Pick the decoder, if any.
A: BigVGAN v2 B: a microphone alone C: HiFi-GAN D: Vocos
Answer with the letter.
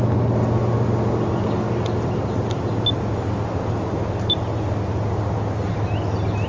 B